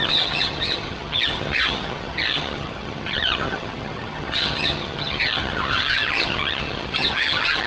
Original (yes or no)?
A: no